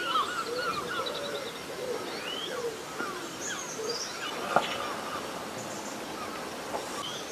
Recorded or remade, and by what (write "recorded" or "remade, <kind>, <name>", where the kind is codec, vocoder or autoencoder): recorded